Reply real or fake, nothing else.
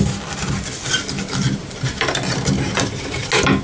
real